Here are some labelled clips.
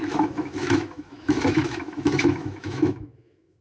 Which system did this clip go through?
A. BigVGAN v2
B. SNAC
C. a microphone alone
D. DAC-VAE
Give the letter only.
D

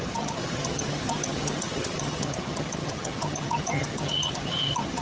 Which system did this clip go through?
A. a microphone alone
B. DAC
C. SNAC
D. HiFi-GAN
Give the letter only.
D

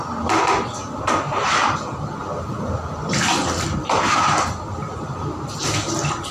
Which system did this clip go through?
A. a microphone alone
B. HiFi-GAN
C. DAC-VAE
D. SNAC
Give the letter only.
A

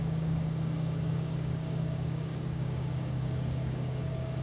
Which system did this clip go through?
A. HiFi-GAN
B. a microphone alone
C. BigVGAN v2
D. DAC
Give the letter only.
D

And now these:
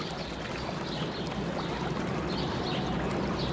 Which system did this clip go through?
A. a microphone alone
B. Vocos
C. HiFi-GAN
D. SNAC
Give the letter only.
A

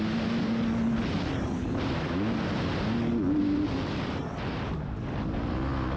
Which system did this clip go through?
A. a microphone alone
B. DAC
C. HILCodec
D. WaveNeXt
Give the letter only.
A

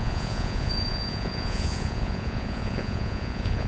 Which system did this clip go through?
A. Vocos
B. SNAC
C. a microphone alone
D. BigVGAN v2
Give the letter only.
A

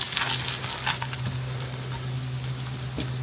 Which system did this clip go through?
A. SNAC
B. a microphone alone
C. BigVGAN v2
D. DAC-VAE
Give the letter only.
B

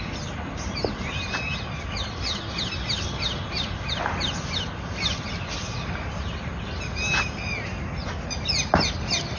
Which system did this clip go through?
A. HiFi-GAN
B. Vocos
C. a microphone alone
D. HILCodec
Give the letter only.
C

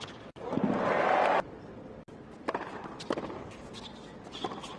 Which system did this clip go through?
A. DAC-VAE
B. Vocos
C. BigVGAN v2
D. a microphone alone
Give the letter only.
D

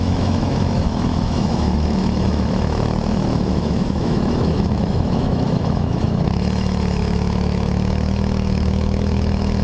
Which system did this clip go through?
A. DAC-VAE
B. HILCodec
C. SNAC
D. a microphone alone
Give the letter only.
A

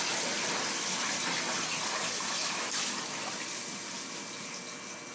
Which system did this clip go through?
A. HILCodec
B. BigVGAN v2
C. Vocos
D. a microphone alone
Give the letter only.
D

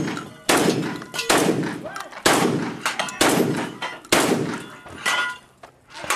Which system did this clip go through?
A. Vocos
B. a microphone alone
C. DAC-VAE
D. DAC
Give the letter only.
B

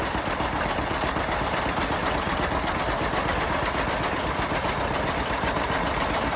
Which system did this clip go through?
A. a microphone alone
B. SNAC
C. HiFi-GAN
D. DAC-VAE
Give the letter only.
A